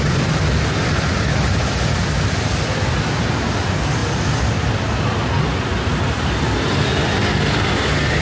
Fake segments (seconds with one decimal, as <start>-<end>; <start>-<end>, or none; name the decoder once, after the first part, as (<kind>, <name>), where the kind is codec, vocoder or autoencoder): none